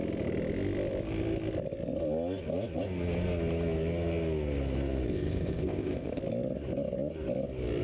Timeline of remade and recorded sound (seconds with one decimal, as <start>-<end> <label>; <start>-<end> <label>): 0.0-5.1 recorded; 5.1-6.2 remade; 6.2-7.8 recorded